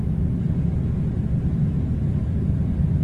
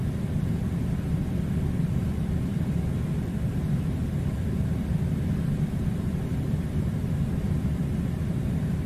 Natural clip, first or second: first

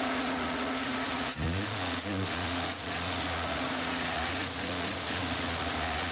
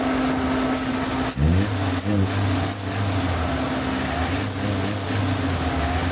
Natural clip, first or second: second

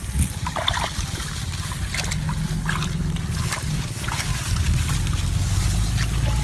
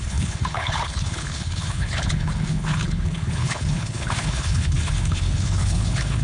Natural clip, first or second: first